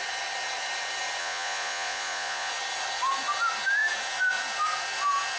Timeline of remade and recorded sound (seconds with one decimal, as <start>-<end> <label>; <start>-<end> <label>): 0.0-1.2 recorded; 1.2-2.5 remade; 2.5-5.4 recorded